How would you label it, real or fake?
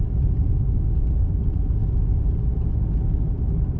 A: real